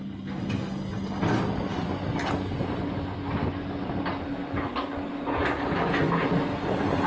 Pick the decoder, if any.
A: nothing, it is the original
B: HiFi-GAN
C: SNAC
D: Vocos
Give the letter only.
A